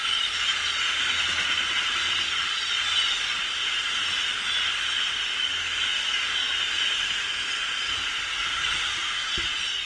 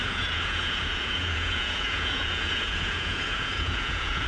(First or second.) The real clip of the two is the first